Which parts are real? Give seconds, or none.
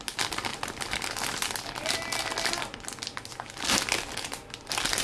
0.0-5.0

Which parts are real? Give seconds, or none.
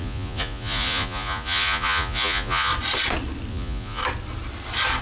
2.7-3.5; 4.0-5.0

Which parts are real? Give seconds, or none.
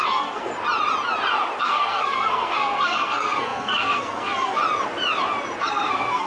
0.5-1.6; 4.6-5.6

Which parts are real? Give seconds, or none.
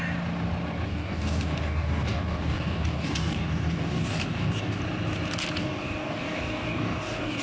0.0-0.9; 4.8-5.6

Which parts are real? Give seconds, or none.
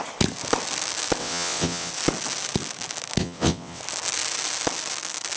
0.0-1.2; 1.9-3.2; 3.8-5.4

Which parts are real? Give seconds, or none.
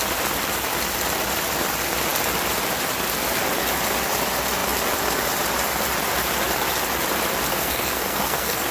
0.0-7.5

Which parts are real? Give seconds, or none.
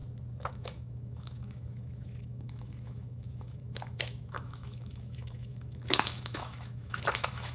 0.0-0.5